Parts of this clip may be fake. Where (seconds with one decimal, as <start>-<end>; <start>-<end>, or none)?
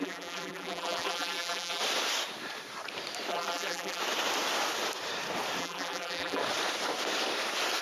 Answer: 0.0-1.8; 3.3-4.0; 5.6-6.4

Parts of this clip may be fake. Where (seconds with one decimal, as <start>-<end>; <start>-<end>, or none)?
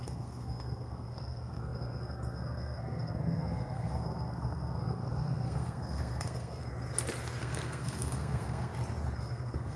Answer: 0.0-6.6; 7.4-8.7; 9.2-9.8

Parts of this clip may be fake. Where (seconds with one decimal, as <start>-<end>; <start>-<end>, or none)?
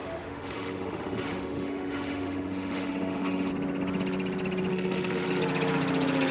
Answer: 0.0-3.5; 4.7-5.4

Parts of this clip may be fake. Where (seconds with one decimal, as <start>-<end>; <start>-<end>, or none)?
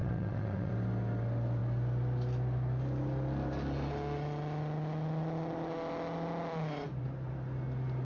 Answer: 0.0-0.7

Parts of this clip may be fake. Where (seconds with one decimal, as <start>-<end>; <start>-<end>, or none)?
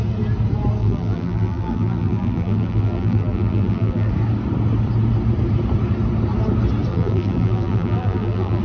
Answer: 0.8-4.1; 6.9-8.6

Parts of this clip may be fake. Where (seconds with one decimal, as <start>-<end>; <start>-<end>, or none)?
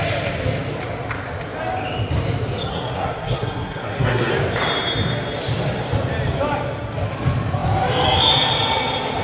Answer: 2.7-4.3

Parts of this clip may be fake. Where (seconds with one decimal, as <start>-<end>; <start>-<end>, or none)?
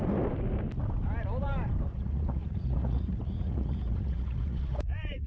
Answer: 1.9-5.3